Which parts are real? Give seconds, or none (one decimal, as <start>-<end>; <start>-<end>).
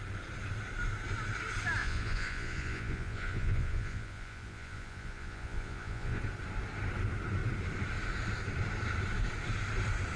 0.0-1.8; 6.2-10.2